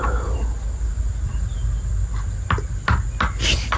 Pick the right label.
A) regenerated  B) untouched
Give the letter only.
B